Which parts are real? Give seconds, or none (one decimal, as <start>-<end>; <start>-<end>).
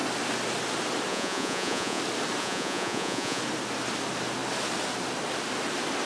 0.0-1.1; 2.0-2.4; 3.4-6.1